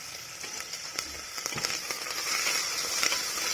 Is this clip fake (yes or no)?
no